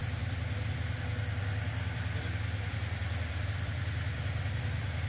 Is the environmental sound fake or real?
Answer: fake